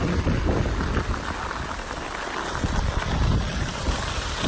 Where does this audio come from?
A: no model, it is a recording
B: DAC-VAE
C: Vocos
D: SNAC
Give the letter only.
A